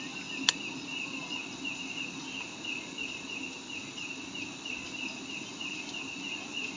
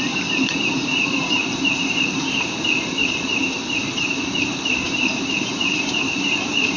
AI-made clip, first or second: second